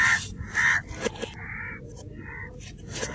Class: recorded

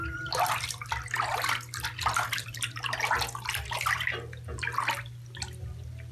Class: recorded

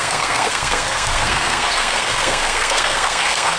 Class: remade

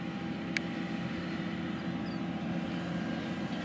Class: recorded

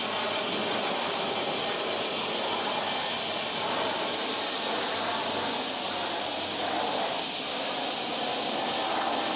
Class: recorded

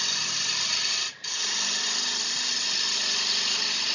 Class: recorded